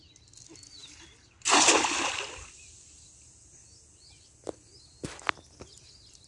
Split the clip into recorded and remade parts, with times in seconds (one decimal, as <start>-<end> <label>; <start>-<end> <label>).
0.0-6.3 recorded